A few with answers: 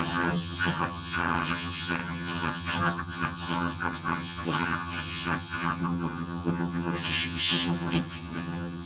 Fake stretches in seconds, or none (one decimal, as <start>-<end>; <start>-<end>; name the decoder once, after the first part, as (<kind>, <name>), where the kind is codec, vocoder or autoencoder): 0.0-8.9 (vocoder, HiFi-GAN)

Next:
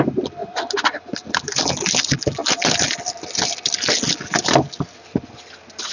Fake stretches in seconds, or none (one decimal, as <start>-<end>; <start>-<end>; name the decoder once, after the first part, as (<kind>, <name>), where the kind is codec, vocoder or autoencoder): none

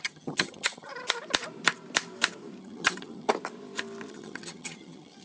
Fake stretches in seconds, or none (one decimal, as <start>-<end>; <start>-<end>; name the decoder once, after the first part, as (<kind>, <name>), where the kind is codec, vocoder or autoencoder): 0.0-0.9 (vocoder, HiFi-GAN); 2.6-3.3; 4.1-5.2

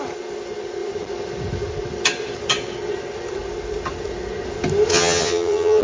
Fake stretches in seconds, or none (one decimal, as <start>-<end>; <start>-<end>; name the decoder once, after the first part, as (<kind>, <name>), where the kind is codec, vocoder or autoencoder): 4.9-5.8 (vocoder, HiFi-GAN)

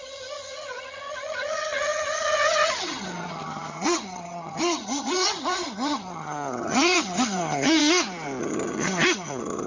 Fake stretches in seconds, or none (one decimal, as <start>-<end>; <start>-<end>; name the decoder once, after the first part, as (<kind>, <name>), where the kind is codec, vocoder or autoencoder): 0.0-7.8 (vocoder, HiFi-GAN); 8.4-9.7